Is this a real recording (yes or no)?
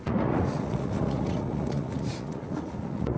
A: no